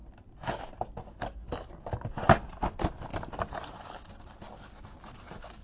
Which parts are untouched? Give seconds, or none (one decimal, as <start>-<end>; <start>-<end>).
0.0-5.6